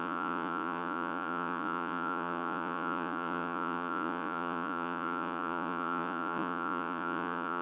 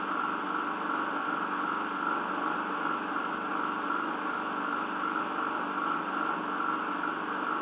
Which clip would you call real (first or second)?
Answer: second